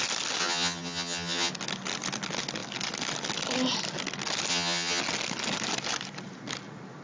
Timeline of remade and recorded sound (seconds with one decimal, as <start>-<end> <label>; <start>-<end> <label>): 0.0-0.4 recorded; 0.4-1.5 remade; 1.5-4.5 recorded; 4.5-5.0 remade; 5.0-7.0 recorded